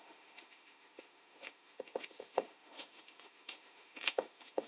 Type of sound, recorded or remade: remade